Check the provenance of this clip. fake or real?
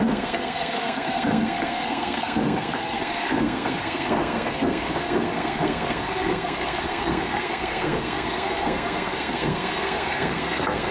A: fake